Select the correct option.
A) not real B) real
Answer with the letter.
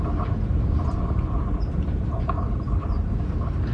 A